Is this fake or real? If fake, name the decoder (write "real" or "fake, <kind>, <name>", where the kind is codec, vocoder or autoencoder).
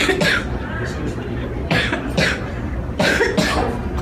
real